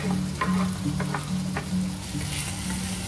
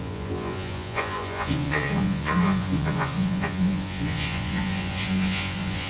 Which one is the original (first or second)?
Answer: first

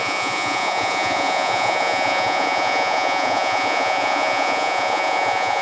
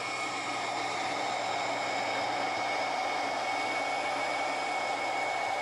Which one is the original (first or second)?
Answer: second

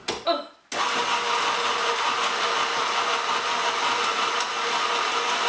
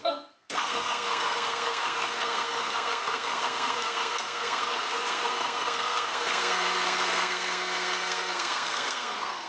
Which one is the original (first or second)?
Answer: first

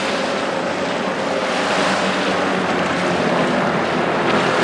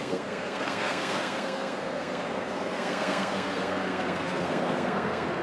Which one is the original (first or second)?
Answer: first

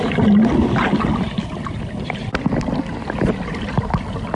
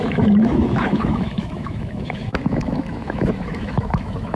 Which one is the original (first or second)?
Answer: first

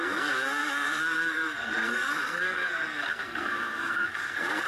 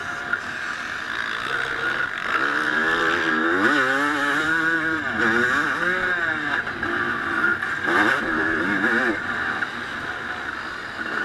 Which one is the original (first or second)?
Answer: second